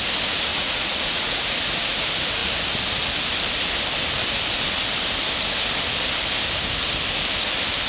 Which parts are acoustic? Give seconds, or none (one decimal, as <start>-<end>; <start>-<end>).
0.0-0.5; 1.4-7.9